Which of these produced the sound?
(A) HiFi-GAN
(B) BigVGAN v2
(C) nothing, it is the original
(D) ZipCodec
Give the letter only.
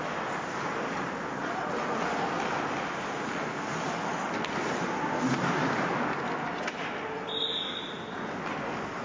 C